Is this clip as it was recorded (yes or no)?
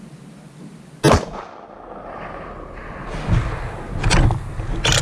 yes